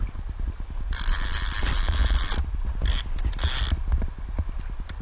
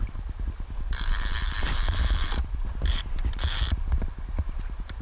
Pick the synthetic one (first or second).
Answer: second